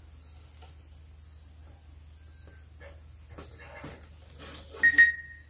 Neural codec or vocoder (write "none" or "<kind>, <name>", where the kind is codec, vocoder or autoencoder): none